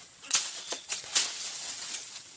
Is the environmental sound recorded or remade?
remade